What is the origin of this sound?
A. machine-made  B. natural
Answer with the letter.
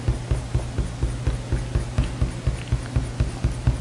B